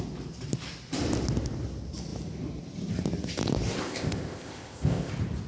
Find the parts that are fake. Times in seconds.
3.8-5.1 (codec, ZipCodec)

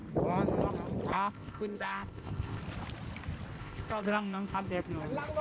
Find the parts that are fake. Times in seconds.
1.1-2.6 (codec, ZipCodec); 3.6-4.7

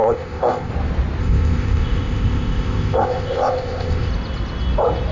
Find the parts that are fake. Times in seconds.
0.0-0.7 (codec, ZipCodec); 1.2-4.1